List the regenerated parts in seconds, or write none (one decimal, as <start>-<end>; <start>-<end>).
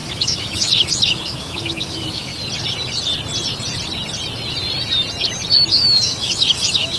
0.0-2.3; 5.7-7.0